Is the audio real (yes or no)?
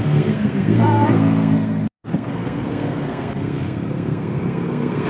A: no